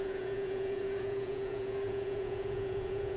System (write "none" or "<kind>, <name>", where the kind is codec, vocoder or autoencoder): vocoder, Vocos